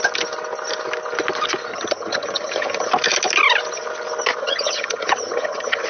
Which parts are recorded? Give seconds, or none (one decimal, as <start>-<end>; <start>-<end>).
0.0-1.7; 2.9-4.4